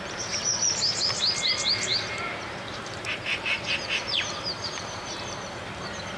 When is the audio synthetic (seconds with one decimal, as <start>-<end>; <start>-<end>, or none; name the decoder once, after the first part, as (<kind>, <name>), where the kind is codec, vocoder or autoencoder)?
1.9-5.6 (vocoder, BigVGAN v2)